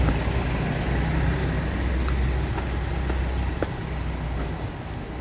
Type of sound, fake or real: real